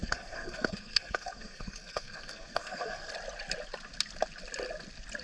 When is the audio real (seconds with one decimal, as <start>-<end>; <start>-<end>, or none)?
3.1-5.2